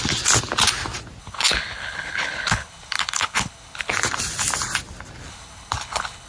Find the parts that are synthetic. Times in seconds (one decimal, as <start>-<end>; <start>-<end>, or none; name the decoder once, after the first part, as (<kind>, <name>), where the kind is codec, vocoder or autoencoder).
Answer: 1.2-3.9 (codec, HILCodec); 5.3-6.3